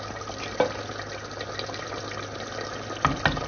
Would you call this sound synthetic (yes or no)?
no